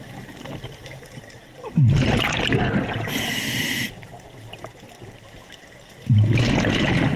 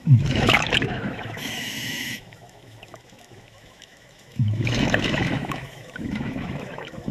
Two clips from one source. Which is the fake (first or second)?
second